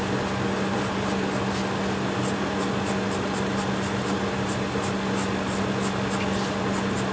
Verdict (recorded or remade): recorded